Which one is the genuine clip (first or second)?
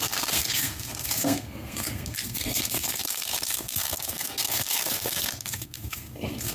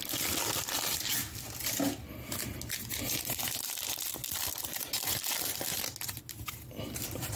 second